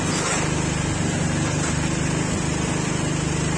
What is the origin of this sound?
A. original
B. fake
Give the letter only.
A